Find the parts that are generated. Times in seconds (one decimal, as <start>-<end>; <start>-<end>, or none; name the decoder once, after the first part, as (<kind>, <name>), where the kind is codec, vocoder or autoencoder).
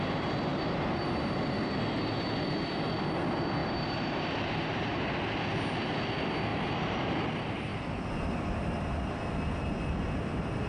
0.5-1.5 (vocoder, BigVGAN v2); 3.6-5.0; 6.5-7.1